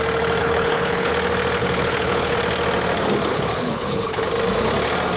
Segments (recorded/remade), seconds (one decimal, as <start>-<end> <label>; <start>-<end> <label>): 0.0-0.4 recorded; 0.4-1.1 remade; 1.1-1.6 recorded; 1.6-2.4 remade; 2.4-3.3 recorded; 3.3-4.2 remade; 4.2-5.2 recorded